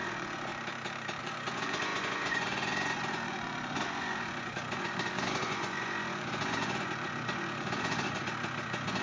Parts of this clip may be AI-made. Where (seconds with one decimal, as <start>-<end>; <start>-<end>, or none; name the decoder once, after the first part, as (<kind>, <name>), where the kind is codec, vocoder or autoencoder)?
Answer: 0.0-0.5 (vocoder, Vocos); 1.2-9.0